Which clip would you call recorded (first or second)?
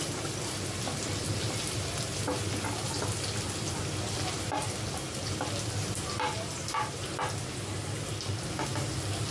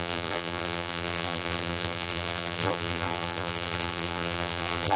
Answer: first